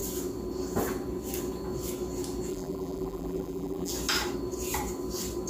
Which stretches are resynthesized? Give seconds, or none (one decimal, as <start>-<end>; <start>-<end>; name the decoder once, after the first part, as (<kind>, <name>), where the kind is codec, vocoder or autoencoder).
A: 2.5-3.9 (vocoder, BigVGAN v2)

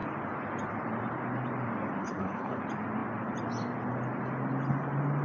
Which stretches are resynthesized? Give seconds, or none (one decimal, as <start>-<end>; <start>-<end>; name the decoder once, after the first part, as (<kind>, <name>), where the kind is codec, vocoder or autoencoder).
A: 2.0-2.6 (codec, HILCodec)

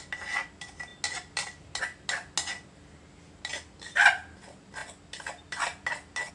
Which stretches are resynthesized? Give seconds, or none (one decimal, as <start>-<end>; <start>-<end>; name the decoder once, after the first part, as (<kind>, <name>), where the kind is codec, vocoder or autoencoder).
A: none

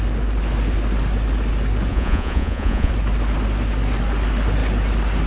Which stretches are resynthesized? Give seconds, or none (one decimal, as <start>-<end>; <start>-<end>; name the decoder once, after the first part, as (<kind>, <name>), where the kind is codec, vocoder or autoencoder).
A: 1.9-2.9 (vocoder, Vocos)